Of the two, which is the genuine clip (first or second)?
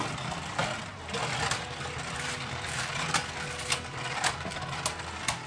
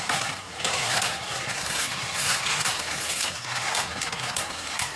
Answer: first